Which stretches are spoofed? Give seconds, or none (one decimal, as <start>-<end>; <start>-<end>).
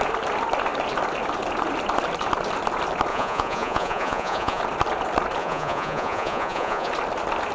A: 3.1-4.6; 5.4-6.9